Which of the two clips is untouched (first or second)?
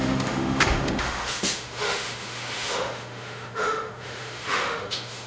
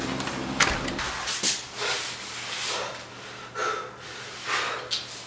second